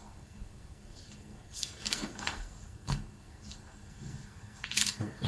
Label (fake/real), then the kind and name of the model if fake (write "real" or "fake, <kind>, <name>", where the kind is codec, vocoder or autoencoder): fake, codec, SNAC